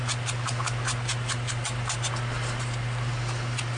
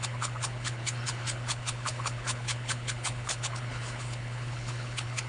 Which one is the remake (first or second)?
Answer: second